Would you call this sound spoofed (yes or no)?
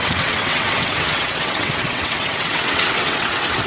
yes